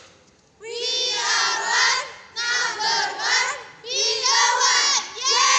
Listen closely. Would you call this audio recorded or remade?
recorded